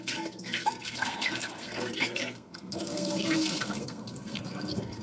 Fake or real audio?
fake